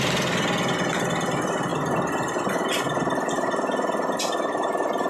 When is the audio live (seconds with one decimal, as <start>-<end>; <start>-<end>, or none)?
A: 0.0-5.1